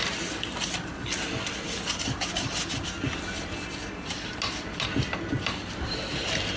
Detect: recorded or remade recorded